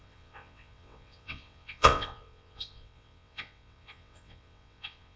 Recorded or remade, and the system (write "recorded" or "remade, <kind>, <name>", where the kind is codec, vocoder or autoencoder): remade, vocoder, WaveNeXt